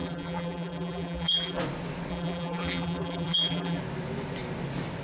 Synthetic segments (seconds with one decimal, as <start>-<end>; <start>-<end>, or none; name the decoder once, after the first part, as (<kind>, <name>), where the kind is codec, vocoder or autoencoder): 0.0-1.6 (vocoder, BigVGAN v2); 2.1-3.8